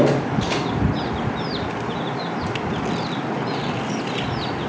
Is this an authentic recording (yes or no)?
yes